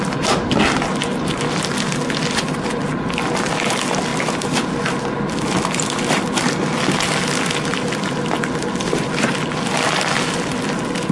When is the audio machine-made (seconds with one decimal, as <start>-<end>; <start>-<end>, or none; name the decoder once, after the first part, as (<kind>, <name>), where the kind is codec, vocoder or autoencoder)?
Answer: none